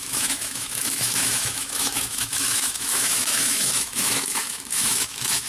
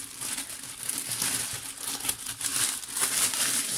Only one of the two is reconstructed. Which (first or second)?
first